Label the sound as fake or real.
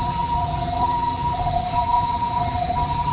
fake